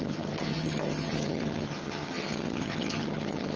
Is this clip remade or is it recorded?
remade